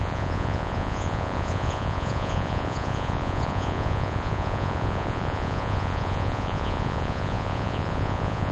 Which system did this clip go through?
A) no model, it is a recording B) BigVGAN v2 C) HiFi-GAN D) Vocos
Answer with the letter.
D